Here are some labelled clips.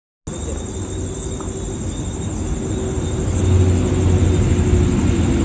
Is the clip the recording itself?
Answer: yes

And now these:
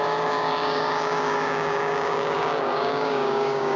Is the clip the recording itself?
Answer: no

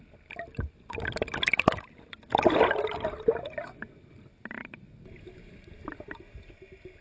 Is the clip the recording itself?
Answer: yes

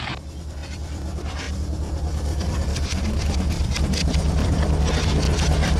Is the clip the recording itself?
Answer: yes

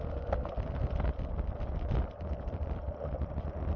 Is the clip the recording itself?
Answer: yes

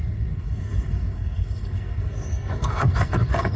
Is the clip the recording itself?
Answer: no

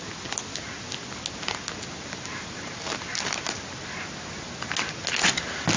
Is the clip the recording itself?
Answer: yes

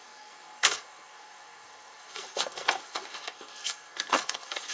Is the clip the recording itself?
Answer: no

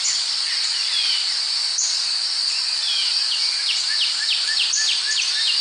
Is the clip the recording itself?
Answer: yes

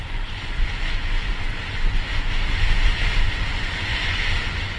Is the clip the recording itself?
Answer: no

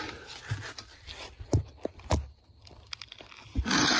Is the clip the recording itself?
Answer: yes